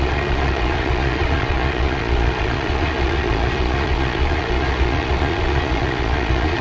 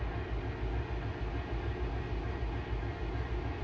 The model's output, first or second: first